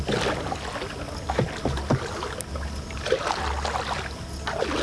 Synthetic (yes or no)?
no